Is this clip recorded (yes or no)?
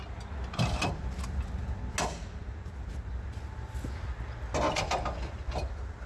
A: yes